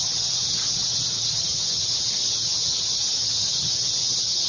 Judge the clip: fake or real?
fake